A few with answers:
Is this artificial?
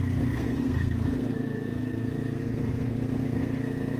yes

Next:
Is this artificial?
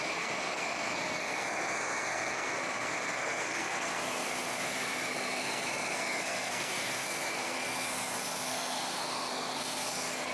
yes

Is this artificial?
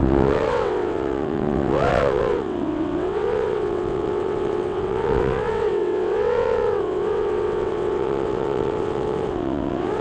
yes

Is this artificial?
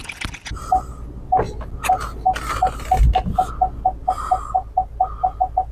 no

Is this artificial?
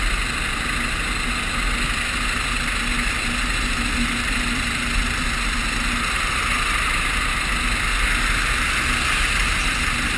no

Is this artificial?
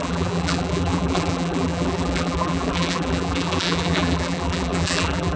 yes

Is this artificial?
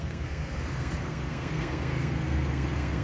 yes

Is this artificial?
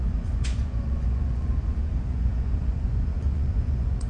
yes